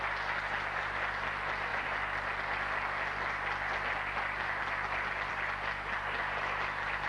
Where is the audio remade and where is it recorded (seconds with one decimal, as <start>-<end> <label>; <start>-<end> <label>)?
0.0-7.1 recorded